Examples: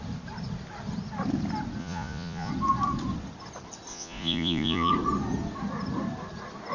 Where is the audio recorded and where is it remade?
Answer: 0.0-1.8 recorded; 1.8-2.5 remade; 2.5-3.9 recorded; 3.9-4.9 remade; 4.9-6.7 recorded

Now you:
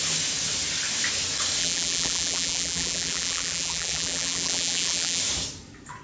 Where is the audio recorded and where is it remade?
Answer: 0.0-1.6 recorded; 1.6-5.2 remade; 5.2-6.0 recorded

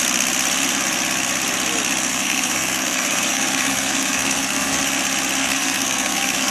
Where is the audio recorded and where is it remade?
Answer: 0.0-2.1 recorded; 2.1-4.8 remade; 4.8-5.4 recorded; 5.4-6.5 remade